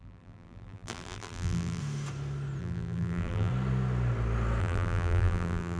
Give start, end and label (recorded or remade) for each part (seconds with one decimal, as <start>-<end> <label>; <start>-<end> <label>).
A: 0.0-1.8 remade; 1.8-2.6 recorded; 2.6-3.5 remade; 3.5-4.6 recorded; 4.6-5.8 remade